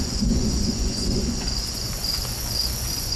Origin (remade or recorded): remade